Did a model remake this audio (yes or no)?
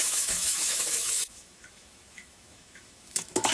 yes